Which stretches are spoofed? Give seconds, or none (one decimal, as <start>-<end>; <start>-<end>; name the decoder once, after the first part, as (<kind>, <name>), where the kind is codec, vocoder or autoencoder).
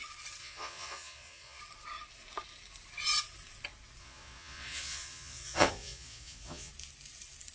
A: 0.4-1.6 (vocoder, Vocos); 4.0-6.7